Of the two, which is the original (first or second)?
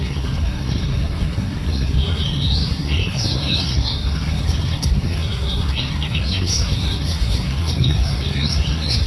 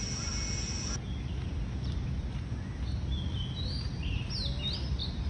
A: second